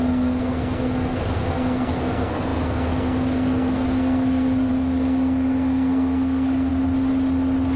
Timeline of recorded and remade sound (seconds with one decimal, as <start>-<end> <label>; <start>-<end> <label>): 0.0-6.7 remade; 6.7-7.8 recorded